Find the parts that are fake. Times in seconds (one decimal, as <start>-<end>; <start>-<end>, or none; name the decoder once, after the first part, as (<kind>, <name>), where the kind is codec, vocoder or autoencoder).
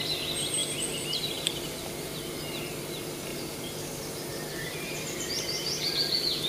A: 0.6-1.9 (vocoder, BigVGAN v2); 3.3-3.9; 4.3-5.8